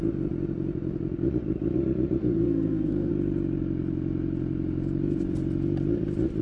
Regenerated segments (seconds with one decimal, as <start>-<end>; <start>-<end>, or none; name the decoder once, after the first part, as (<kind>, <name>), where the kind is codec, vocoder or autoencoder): 2.2-3.1 (codec, SNAC)